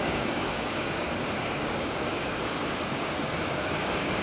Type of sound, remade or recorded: remade